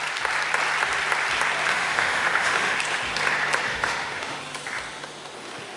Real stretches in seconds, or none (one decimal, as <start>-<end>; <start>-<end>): 0.0-1.7; 2.8-3.7; 4.4-5.8